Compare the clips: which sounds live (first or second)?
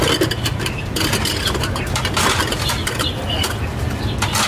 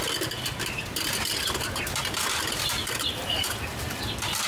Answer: first